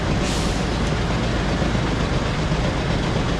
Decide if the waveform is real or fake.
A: real